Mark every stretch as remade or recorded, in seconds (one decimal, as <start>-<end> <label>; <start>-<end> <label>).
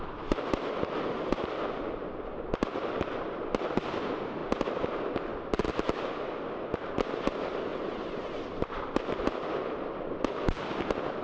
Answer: 0.0-4.4 recorded; 4.4-5.4 remade; 5.4-7.7 recorded; 7.7-9.2 remade; 9.2-11.2 recorded